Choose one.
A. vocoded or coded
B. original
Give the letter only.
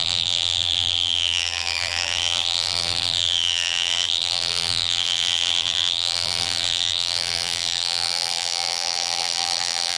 A